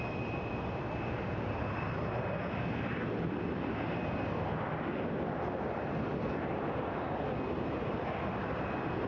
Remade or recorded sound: recorded